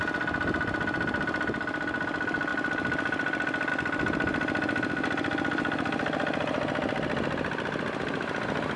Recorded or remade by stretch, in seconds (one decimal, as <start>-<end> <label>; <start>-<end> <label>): 0.0-8.8 recorded